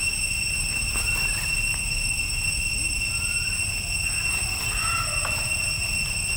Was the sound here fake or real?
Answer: real